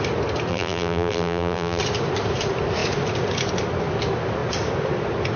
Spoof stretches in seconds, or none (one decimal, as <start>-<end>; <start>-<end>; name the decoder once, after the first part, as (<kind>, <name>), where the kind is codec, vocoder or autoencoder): 0.5-1.8 (vocoder, BigVGAN v2)

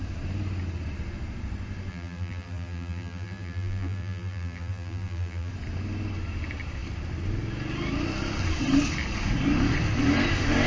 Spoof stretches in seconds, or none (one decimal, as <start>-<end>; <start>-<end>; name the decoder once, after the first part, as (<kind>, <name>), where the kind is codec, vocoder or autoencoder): 1.9-5.5 (vocoder, BigVGAN v2)

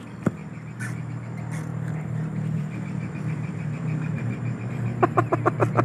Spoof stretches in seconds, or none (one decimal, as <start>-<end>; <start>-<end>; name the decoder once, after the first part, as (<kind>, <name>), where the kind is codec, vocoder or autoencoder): 0.4-1.1 (vocoder, BigVGAN v2); 1.7-4.7

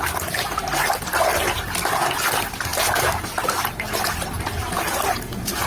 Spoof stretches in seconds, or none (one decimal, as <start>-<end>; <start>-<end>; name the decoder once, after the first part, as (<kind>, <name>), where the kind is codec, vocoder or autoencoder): none

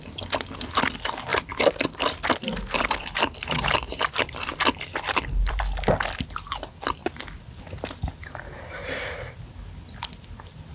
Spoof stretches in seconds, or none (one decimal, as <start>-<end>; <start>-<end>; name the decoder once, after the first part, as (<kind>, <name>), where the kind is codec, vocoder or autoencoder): 1.3-5.6 (vocoder, BigVGAN v2); 7.0-7.6

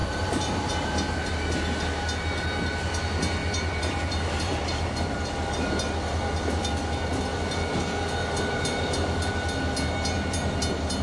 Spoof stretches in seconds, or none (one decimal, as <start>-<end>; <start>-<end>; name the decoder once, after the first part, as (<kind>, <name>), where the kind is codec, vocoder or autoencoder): 0.0-1.3 (vocoder, BigVGAN v2); 3.4-5.7